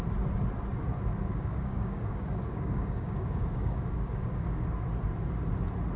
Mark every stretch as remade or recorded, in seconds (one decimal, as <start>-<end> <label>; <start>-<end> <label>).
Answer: 0.0-1.1 recorded; 1.1-4.7 remade; 4.7-6.0 recorded